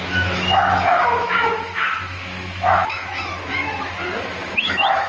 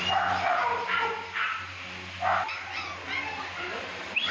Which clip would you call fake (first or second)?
first